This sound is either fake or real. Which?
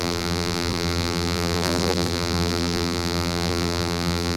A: fake